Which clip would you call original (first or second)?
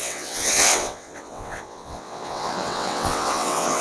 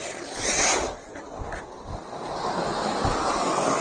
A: second